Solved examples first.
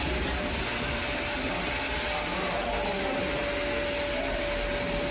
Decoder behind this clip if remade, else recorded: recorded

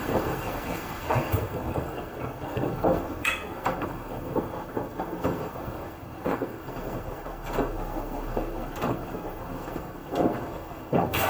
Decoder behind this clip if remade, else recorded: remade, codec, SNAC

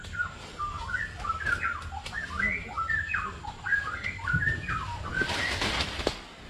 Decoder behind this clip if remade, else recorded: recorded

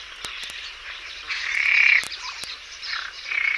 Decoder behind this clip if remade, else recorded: remade, vocoder, BigVGAN v2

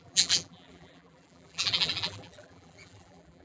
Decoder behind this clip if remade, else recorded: remade, vocoder, BigVGAN v2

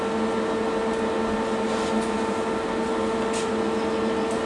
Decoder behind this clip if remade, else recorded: recorded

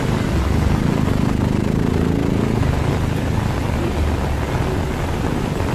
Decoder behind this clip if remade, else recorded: recorded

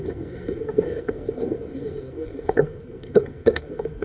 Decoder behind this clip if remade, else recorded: remade, codec, SNAC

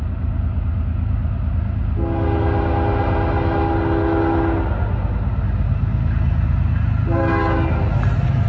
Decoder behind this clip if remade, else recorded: recorded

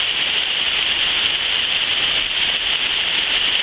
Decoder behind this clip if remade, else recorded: recorded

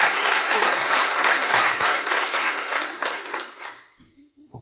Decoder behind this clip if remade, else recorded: remade, codec, SNAC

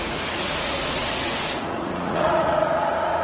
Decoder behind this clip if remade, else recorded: remade, vocoder, Vocos